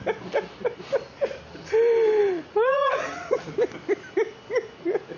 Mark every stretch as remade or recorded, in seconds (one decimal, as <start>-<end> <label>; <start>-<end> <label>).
0.0-2.2 recorded; 2.2-3.4 remade; 3.4-5.2 recorded